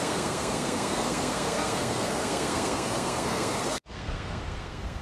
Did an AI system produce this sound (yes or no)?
yes